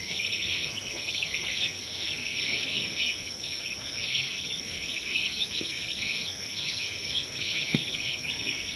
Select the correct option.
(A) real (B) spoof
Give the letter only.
B